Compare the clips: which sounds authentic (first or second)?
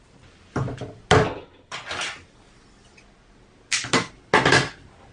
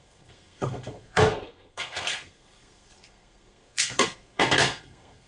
first